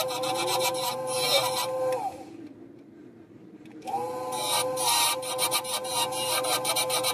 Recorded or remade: remade